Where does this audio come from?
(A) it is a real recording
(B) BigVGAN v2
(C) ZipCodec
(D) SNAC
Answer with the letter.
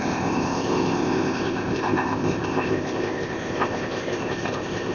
C